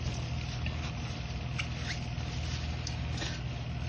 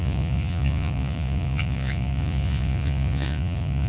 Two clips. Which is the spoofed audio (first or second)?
second